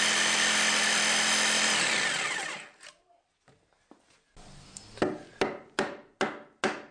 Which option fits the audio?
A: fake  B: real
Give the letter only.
B